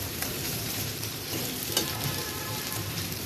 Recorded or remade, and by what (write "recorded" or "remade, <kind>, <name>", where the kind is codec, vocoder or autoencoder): remade, vocoder, BigVGAN v2